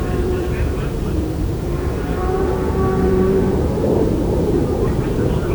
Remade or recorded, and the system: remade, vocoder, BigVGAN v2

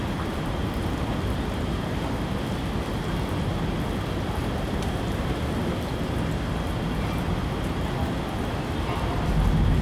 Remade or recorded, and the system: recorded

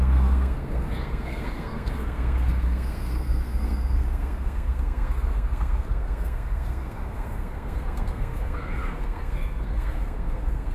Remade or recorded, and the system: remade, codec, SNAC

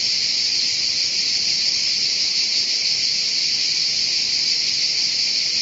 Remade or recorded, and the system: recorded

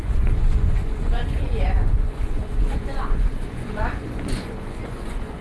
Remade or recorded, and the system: remade, vocoder, Vocos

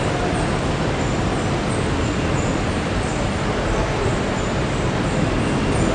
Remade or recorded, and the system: recorded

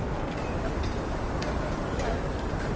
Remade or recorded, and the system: recorded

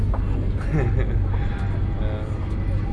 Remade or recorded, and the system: recorded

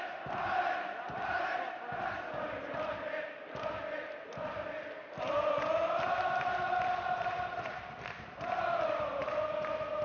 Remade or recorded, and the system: recorded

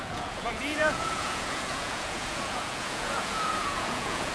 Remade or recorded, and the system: remade, vocoder, Vocos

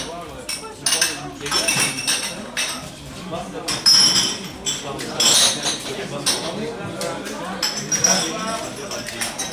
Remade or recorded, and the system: recorded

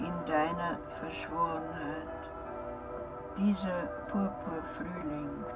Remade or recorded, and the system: recorded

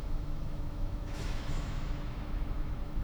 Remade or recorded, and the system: remade, autoencoder, DAC-VAE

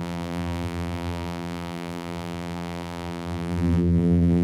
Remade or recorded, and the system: remade, vocoder, BigVGAN v2